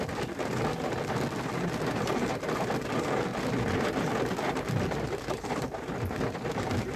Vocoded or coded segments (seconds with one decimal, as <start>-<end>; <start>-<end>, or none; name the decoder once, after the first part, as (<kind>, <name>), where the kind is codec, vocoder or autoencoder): none